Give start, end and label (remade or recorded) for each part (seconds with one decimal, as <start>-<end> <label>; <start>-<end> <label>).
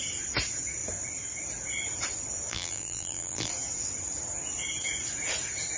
0.0-2.5 recorded; 2.5-3.5 remade; 3.5-5.8 recorded